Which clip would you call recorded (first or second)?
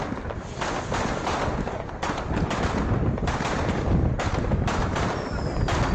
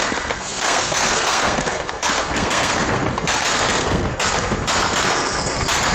first